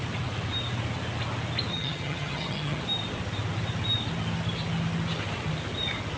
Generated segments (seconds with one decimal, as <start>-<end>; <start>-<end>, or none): 1.7-2.8